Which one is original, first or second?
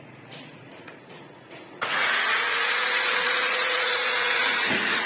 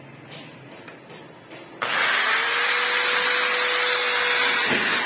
second